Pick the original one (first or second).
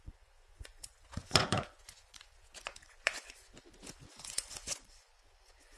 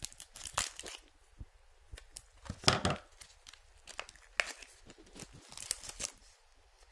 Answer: second